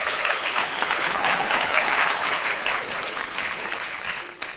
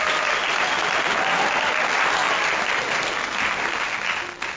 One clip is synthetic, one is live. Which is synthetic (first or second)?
first